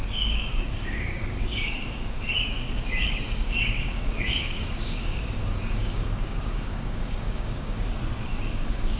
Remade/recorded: remade